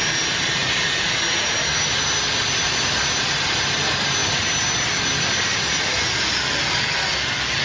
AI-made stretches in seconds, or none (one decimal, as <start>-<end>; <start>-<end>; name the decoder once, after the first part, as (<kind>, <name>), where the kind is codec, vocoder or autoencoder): none

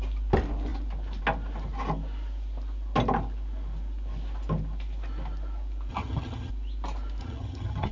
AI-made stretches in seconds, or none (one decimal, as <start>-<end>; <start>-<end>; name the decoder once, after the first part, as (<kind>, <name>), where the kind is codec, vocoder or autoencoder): 5.9-6.5 (vocoder, HiFi-GAN); 7.2-7.9